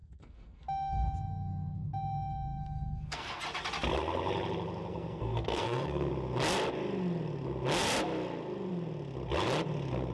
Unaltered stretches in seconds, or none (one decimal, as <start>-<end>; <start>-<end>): 3.4-4.9; 6.1-10.1